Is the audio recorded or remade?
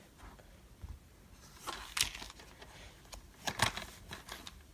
recorded